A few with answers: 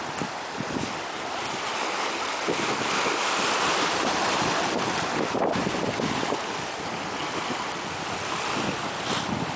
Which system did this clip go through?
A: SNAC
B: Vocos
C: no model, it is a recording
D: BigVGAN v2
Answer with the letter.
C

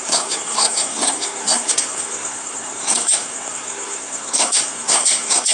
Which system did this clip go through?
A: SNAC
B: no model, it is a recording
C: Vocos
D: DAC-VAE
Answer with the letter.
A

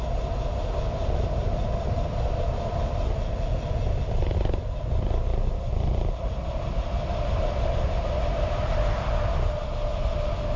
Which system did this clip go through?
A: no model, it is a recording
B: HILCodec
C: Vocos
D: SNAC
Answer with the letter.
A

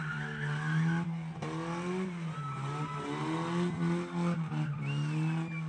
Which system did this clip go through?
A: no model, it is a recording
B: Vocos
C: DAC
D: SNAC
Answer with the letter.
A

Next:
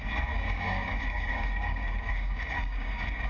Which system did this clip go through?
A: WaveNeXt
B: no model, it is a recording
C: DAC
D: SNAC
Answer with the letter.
C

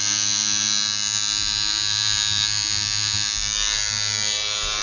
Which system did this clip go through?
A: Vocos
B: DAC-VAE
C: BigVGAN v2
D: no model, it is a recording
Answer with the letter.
D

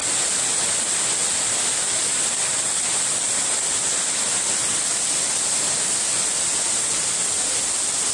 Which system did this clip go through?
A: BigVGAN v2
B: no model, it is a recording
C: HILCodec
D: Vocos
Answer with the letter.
B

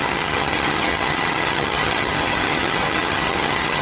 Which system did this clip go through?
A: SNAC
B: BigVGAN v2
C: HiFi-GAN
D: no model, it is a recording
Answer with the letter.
C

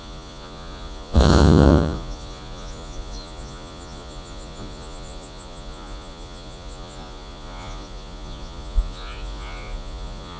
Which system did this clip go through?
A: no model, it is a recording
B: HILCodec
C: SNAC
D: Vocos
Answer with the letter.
D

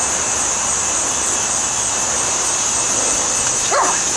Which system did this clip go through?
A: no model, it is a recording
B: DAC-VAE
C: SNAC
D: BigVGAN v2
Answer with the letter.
A